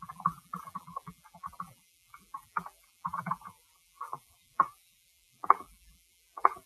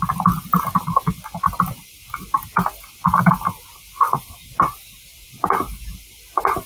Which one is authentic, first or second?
second